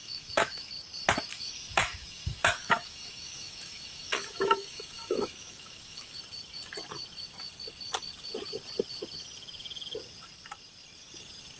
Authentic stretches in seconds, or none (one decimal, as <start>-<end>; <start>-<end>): 0.7-1.3; 6.2-11.6